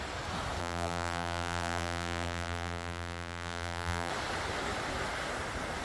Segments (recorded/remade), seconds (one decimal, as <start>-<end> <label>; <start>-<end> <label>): 0.0-0.6 recorded; 0.6-4.1 remade; 4.1-5.8 recorded